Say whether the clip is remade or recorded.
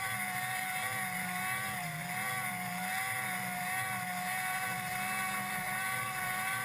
remade